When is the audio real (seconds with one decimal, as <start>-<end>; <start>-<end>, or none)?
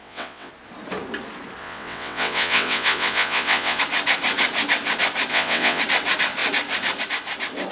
0.5-1.6; 3.8-5.3; 5.8-7.7